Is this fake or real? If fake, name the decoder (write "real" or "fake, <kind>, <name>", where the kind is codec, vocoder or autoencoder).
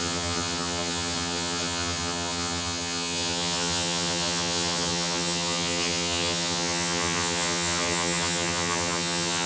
fake, vocoder, HiFi-GAN